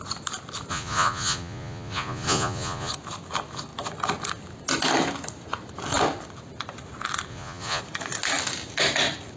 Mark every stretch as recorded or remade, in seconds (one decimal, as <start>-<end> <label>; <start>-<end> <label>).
0.0-0.7 recorded; 0.7-2.9 remade; 2.9-7.3 recorded; 7.3-7.8 remade; 7.8-9.4 recorded